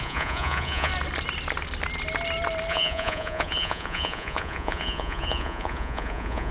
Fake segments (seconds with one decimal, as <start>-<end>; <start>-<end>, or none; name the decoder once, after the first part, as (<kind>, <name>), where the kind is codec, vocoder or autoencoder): 0.0-0.9 (vocoder, Vocos); 2.7-6.5